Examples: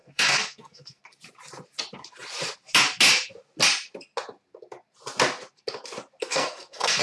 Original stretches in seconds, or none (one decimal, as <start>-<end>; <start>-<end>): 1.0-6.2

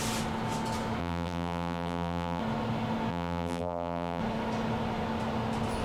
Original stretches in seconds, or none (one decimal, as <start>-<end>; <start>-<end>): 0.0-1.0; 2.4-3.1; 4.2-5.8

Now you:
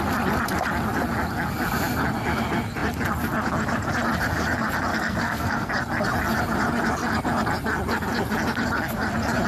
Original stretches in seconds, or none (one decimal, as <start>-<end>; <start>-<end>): 0.0-4.9; 5.7-9.5